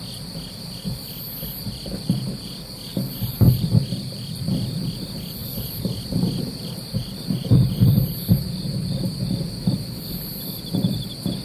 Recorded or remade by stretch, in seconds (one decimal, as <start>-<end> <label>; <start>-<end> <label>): 0.0-2.9 recorded; 2.9-3.6 remade; 3.6-5.4 recorded; 5.4-8.0 remade; 8.0-11.4 recorded